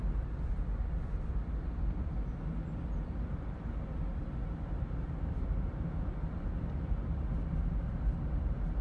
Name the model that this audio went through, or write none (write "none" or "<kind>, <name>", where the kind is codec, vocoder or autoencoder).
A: none